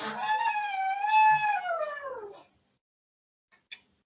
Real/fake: real